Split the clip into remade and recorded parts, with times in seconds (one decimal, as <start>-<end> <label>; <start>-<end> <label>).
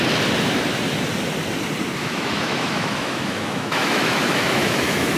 0.0-2.0 recorded; 2.0-5.2 remade